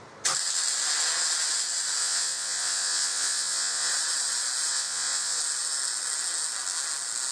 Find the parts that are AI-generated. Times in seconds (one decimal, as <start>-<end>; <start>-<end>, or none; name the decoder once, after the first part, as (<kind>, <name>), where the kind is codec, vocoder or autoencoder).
2.0-3.9 (vocoder, Vocos); 4.7-5.4